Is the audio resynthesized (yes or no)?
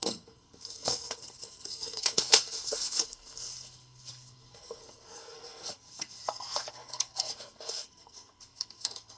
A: yes